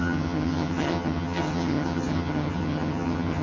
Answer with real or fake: fake